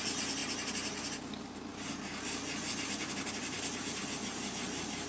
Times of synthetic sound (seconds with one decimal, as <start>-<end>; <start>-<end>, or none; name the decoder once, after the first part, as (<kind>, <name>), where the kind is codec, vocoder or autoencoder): 1.7-5.1 (vocoder, BigVGAN v2)